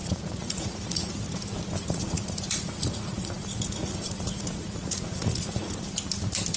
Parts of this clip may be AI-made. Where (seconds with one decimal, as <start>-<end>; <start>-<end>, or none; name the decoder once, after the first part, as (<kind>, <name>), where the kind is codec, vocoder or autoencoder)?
0.0-1.1 (vocoder, Vocos); 1.8-5.8